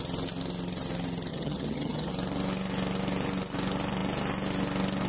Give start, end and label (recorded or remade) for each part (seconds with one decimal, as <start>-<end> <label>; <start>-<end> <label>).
0.0-1.3 recorded; 1.3-2.1 remade; 2.1-5.1 recorded